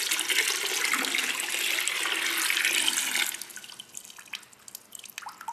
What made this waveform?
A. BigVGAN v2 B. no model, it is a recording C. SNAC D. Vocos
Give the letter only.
B